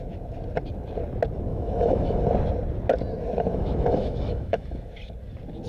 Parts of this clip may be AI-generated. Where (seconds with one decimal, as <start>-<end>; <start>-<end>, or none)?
1.5-2.2; 3.5-4.9